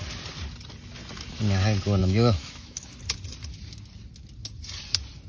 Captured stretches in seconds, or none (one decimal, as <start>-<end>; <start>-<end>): 0.0-2.0; 2.9-5.3